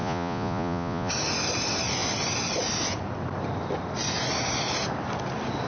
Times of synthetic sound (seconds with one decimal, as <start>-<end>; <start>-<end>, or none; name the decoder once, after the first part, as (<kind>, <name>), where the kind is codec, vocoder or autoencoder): 0.0-1.1 (vocoder, Vocos)